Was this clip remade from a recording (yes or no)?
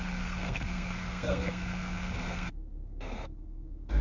yes